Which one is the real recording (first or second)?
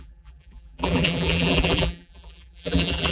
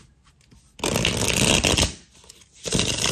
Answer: second